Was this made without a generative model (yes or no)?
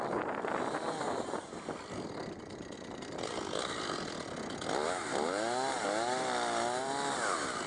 yes